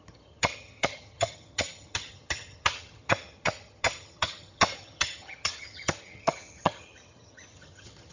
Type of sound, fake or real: fake